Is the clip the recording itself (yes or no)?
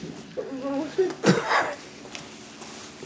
yes